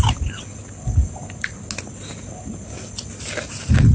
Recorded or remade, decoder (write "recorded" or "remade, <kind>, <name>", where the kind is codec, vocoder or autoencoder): recorded